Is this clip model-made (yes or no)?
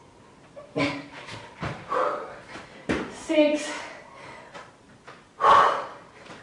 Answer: yes